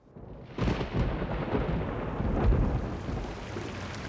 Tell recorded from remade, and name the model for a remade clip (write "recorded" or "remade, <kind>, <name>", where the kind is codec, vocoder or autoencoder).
recorded